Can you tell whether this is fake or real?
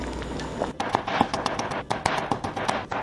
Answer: real